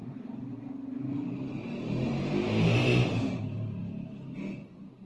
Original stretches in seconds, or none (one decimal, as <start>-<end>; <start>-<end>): 0.5-2.8; 3.4-5.1